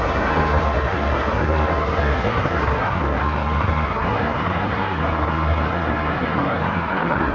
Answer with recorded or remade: remade